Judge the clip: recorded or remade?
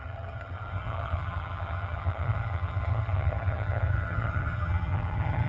remade